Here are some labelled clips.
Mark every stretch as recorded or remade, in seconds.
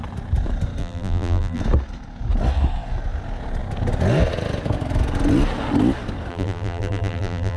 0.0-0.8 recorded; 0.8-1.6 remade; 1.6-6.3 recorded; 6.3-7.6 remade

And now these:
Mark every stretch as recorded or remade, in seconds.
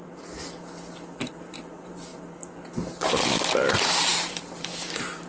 0.0-0.4 remade; 0.4-1.3 recorded; 1.3-2.1 remade; 2.1-4.0 recorded; 4.0-5.3 remade